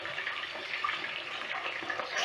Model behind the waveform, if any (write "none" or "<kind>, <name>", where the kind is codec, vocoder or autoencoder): none